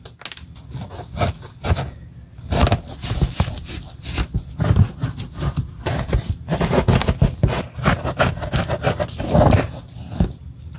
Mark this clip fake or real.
real